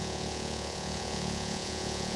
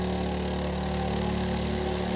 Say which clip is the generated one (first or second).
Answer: first